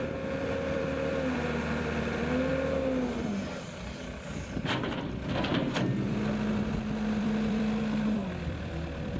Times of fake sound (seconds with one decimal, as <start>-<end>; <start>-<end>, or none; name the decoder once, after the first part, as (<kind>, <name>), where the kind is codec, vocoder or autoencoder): 0.0-2.5 (vocoder, BigVGAN v2); 3.2-9.2